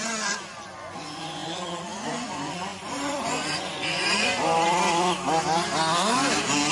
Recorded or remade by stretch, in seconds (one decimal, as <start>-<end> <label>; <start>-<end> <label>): 0.0-4.3 remade; 4.3-6.7 recorded